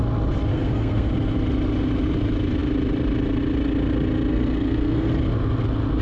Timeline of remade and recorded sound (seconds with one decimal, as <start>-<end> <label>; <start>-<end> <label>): 0.0-0.5 recorded; 0.5-1.1 remade; 1.1-4.3 recorded; 4.3-5.1 remade; 5.1-6.0 recorded